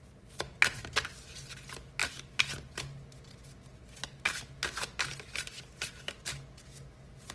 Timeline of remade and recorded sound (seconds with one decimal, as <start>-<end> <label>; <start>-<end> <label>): 0.0-7.3 recorded